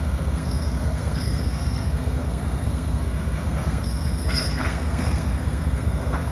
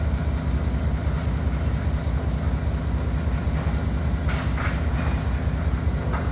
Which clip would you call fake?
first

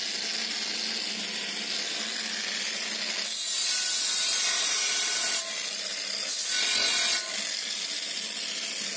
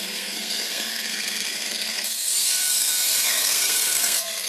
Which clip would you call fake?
second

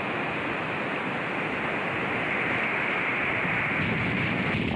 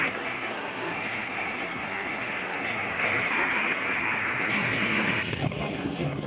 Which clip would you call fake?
second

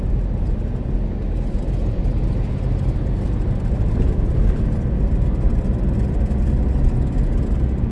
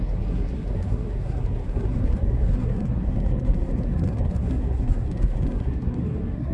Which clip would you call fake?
second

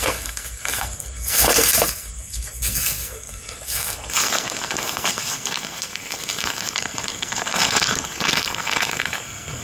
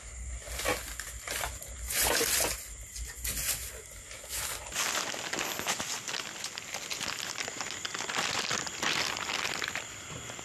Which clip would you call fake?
first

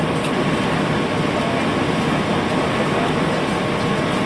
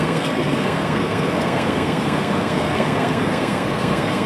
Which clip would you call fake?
second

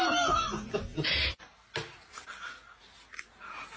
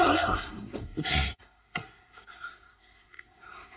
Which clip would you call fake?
second